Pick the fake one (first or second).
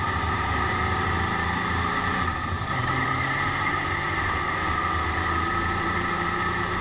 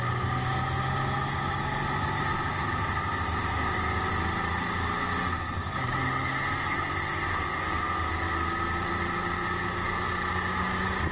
first